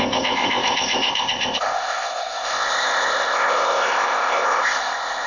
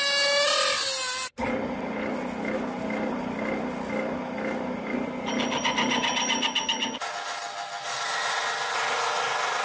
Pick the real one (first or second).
second